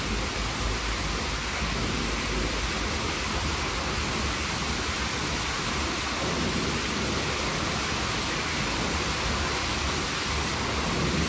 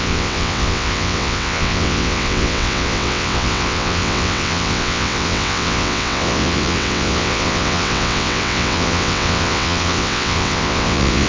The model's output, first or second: second